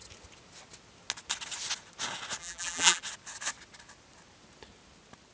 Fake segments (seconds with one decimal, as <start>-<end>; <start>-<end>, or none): 2.4-3.0